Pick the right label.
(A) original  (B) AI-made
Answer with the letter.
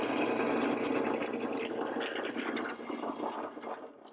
A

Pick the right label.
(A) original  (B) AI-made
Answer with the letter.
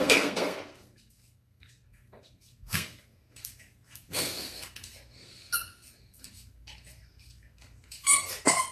B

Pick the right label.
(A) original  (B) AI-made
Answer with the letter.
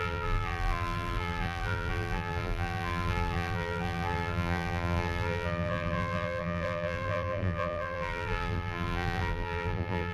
B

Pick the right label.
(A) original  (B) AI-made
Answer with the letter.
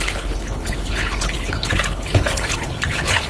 B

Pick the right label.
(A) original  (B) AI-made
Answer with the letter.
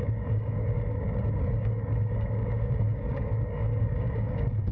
B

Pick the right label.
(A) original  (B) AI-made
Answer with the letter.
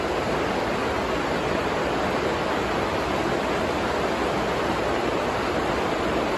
B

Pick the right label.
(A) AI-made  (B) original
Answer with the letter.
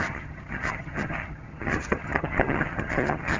A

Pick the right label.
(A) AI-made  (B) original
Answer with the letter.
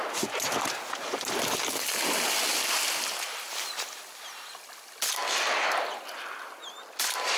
B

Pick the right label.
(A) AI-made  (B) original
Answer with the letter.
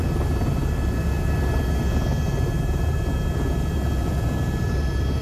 B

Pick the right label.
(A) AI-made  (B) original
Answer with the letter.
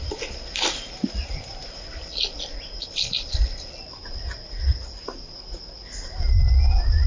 B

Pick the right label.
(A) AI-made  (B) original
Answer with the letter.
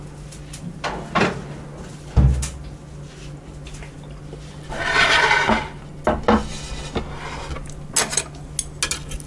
B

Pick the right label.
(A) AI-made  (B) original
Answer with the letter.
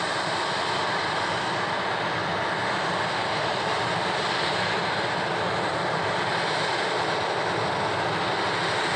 B